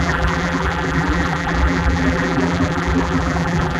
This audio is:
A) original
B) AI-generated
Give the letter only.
B